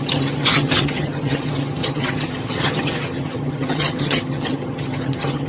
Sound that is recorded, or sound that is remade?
remade